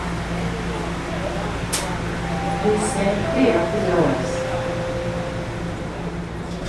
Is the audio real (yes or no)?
yes